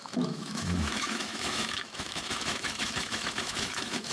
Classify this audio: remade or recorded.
remade